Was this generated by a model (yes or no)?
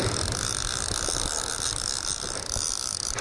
no